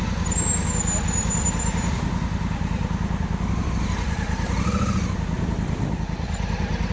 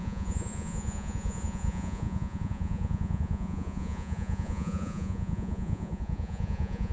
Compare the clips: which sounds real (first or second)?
first